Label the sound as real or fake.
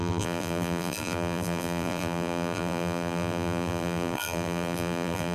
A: fake